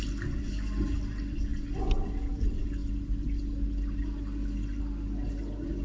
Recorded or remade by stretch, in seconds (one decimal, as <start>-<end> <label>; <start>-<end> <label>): 0.0-5.8 recorded